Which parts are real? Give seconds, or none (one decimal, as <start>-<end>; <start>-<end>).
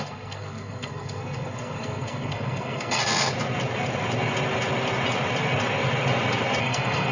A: 3.0-6.6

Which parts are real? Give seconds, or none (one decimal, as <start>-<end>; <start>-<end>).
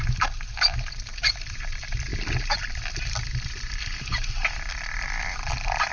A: 0.0-5.9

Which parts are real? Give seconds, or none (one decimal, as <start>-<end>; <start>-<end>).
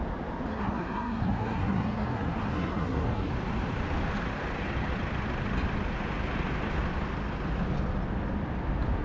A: 0.0-0.5; 3.3-9.0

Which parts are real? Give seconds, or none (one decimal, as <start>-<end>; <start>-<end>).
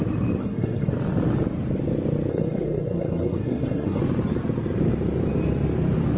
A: 0.0-0.4; 0.9-2.3; 4.0-6.2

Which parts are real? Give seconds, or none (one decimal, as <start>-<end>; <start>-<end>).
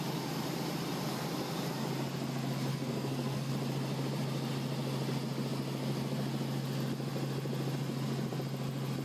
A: 0.0-2.7; 3.5-9.0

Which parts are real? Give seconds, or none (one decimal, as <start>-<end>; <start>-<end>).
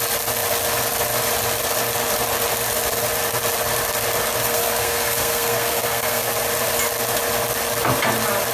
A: 0.0-4.5; 6.3-8.5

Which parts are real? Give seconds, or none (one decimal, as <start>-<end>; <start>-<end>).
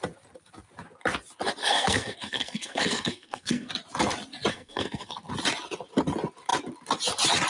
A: 0.0-1.6; 3.7-4.5; 5.3-7.5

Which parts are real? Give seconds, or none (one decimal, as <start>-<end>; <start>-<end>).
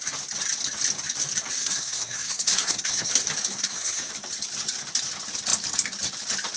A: 0.0-1.6; 3.1-3.5; 4.1-6.6